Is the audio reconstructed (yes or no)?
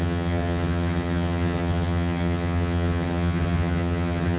yes